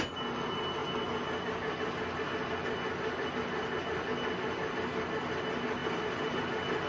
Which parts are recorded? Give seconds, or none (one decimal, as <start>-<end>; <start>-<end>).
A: 0.0-5.8; 6.4-6.9